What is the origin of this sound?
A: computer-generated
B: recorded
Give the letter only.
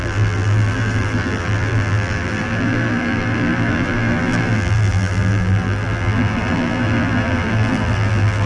A